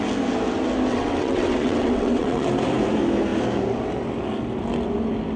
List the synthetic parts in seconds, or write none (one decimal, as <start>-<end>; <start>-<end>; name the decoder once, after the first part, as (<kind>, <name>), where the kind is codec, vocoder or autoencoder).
0.9-2.5 (vocoder, WaveNeXt)